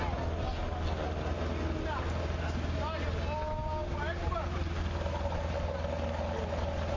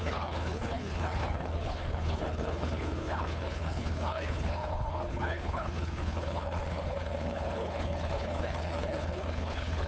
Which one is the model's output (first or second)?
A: second